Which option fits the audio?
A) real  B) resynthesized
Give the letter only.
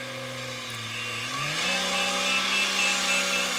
A